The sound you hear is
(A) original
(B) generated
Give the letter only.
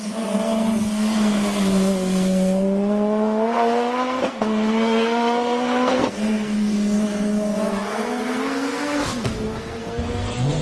B